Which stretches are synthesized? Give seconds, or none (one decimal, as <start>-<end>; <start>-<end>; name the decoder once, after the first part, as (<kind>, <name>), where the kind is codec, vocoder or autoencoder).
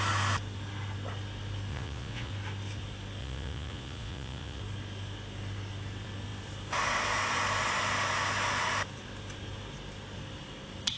1.7-2.3 (vocoder, Vocos); 3.2-4.6